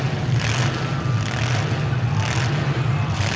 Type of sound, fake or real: real